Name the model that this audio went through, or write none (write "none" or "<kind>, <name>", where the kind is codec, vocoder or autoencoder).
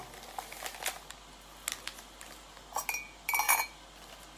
none